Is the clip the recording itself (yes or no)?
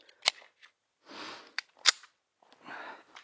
yes